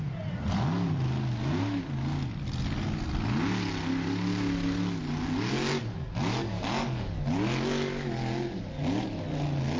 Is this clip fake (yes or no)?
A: no